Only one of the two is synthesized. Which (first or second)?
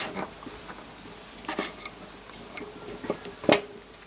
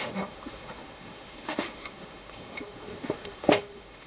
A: second